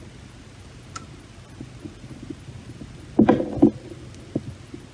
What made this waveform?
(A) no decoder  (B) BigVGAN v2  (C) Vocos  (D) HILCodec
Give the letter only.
A